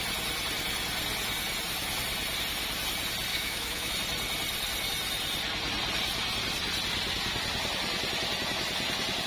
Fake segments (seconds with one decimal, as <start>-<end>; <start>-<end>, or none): 3.3-3.9

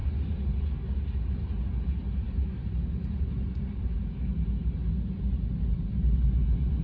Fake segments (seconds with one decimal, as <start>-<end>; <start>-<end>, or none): none

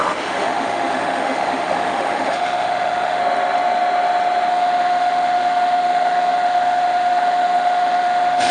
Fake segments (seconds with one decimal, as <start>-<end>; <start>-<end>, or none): 0.0-3.2; 4.5-8.5

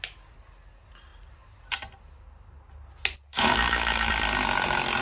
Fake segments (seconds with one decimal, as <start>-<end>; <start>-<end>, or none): 3.3-4.1

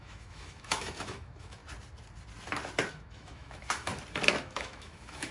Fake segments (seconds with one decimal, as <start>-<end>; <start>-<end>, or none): 0.0-1.6; 2.9-3.9; 4.4-5.3

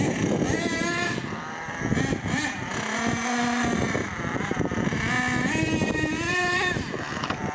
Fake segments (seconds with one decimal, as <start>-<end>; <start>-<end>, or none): none

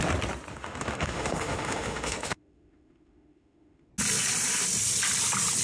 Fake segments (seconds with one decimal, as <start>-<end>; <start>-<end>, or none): 0.5-3.9